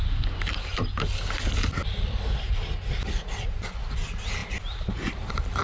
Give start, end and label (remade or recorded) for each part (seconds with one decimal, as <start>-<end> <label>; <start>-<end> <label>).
0.0-5.6 recorded